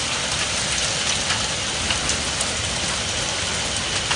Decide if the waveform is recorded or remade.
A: recorded